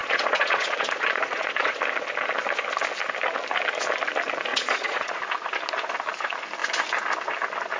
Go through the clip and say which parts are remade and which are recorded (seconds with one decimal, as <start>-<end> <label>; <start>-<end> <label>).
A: 0.0-1.8 remade; 1.8-4.5 recorded; 4.5-5.2 remade; 5.2-7.8 recorded